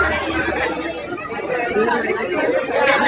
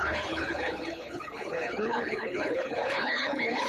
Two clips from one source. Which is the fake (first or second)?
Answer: second